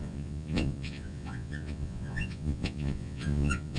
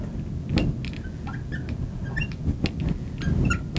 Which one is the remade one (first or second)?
first